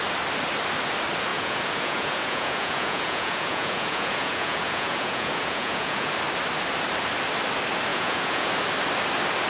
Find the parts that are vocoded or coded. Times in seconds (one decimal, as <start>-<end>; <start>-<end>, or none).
1.3-6.1; 7.9-8.5

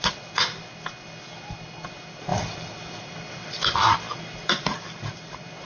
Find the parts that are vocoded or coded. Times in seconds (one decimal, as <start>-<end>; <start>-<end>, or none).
none